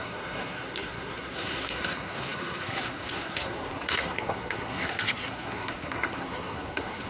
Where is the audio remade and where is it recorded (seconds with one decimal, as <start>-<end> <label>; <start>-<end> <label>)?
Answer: 0.0-7.1 remade